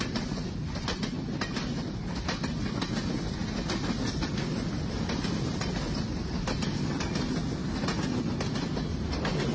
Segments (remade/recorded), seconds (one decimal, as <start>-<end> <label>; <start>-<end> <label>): 0.0-9.5 recorded